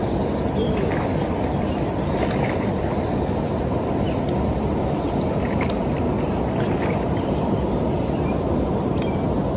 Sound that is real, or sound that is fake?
real